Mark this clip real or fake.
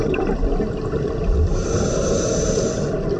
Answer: real